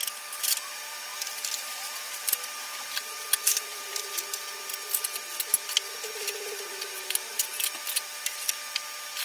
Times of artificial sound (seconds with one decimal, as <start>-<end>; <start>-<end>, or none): 1.1-4.1